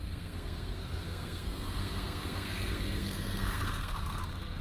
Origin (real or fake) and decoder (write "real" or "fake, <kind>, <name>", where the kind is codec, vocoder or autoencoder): fake, codec, SNAC